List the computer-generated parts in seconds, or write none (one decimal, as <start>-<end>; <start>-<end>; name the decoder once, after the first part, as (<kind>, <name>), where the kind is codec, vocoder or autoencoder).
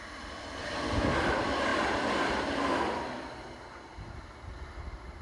none